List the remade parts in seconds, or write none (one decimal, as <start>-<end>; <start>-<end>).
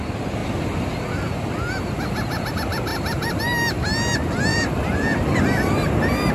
2.9-3.4; 4.5-6.3